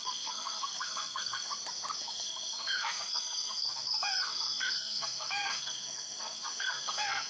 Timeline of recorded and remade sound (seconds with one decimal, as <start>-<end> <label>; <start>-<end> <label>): 0.0-1.5 remade; 1.5-2.0 recorded; 2.0-7.3 remade